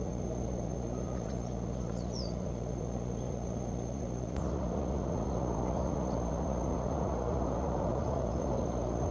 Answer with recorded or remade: remade